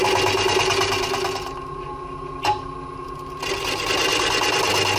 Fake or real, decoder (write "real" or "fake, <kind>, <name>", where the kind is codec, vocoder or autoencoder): real